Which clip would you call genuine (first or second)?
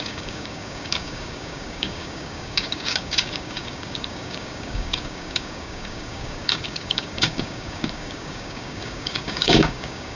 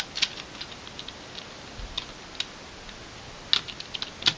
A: second